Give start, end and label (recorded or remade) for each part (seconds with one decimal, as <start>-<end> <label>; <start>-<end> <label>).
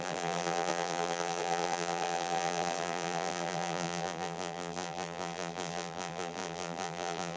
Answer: 0.0-7.4 remade